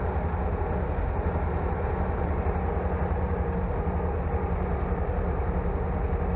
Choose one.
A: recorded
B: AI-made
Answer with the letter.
A